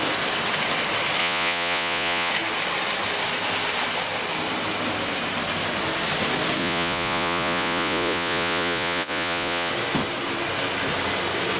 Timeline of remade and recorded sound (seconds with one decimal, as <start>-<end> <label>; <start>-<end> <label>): 0.0-1.2 recorded; 1.2-2.3 remade; 2.3-6.6 recorded; 6.6-9.7 remade; 9.7-11.6 recorded